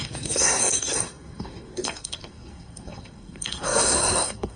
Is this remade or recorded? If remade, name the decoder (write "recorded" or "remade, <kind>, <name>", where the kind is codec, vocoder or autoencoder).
remade, codec, SNAC